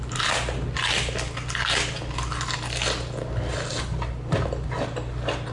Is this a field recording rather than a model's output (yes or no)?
yes